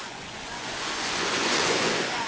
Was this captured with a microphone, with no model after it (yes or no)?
no